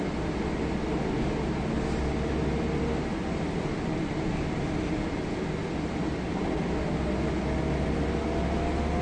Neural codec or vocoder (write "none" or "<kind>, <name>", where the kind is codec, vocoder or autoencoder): none